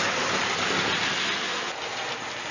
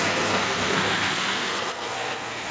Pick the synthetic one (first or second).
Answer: second